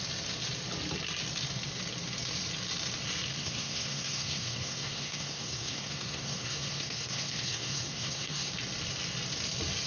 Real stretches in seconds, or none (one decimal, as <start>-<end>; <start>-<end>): 0.0-3.4; 8.5-9.9